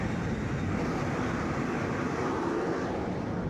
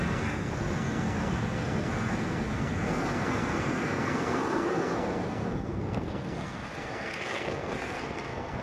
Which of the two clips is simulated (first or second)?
second